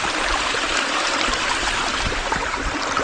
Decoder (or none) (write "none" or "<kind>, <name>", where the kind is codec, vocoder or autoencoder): none